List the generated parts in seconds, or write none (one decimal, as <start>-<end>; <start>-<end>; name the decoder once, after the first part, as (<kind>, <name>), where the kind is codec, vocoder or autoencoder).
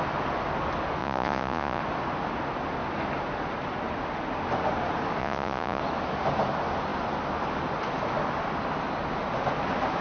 1.0-1.8 (vocoder, Vocos); 5.2-5.8